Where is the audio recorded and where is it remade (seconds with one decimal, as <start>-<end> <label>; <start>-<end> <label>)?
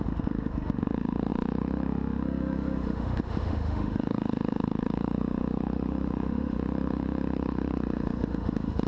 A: 0.0-8.9 remade